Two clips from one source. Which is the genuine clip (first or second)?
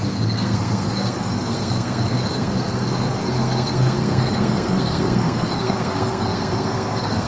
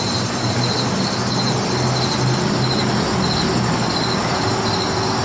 second